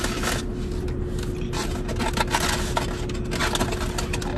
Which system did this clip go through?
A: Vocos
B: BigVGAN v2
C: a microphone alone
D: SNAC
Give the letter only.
C